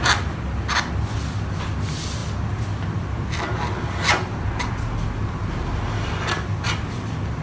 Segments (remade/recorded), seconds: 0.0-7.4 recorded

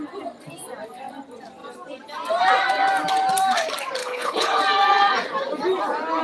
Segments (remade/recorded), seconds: 0.0-4.0 recorded; 4.0-4.6 remade; 4.6-6.2 recorded